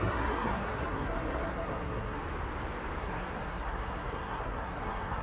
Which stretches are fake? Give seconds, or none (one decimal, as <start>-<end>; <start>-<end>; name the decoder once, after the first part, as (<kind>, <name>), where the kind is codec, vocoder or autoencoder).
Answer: 0.0-2.2 (codec, SNAC); 3.0-5.2